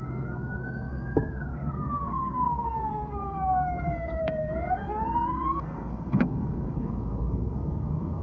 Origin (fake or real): fake